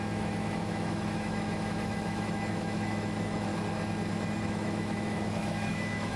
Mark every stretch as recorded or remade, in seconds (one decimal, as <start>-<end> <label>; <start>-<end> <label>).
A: 0.0-3.5 remade; 3.5-4.4 recorded; 4.4-6.2 remade

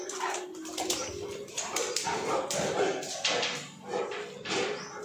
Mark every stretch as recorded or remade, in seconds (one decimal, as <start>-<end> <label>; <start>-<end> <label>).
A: 0.0-5.0 recorded

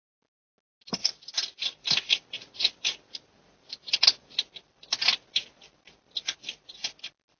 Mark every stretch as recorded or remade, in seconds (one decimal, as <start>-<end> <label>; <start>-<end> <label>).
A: 0.0-7.4 recorded